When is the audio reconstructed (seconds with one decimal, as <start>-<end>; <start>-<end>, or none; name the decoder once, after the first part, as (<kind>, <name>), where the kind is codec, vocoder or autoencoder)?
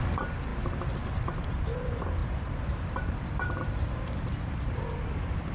2.2-5.0 (vocoder, BigVGAN v2)